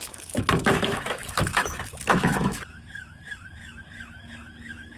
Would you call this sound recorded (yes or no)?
no